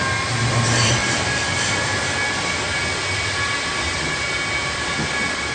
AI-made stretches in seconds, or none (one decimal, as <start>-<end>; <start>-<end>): 1.0-2.5